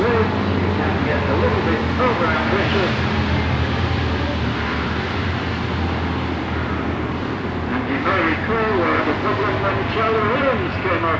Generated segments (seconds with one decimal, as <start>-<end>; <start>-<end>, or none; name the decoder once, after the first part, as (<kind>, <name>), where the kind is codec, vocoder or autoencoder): 7.7-8.4 (codec, DAC)